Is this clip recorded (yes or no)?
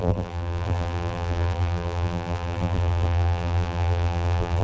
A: no